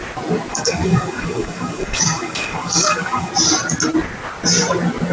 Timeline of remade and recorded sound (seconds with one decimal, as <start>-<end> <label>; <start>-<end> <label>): 0.0-0.5 recorded; 0.5-3.3 remade; 3.3-5.1 recorded